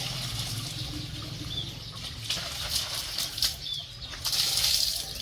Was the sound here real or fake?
real